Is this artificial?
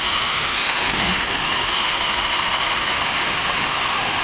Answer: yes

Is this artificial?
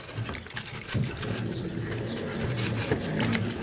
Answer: no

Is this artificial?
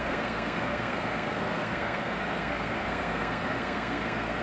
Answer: yes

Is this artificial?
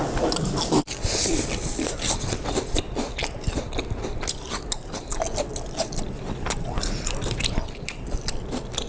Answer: no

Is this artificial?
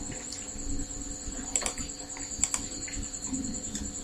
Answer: no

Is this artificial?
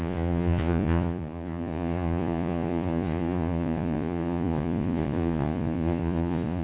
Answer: yes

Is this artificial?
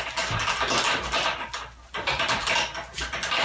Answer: no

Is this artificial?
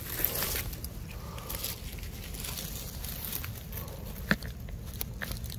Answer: no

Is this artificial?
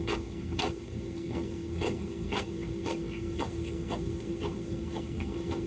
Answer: yes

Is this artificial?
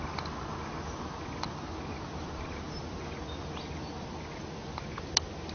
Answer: no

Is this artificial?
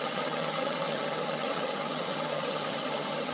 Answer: yes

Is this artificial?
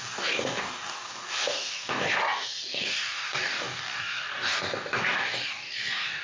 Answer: yes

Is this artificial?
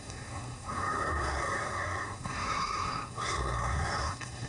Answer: yes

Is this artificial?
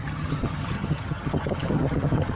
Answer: yes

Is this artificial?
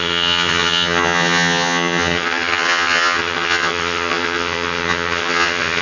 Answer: yes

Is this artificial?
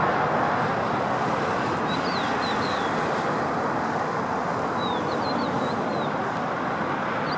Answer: no